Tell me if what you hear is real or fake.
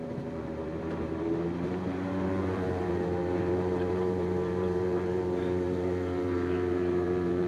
fake